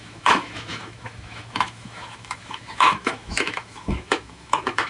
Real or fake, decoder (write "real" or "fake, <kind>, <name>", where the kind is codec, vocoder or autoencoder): fake, autoencoder, DAC-VAE